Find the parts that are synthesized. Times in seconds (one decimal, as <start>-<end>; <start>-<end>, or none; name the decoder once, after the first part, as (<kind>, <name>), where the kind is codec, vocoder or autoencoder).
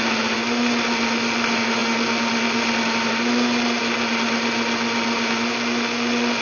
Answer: none